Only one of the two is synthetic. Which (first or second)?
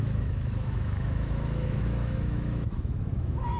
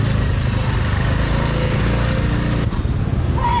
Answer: first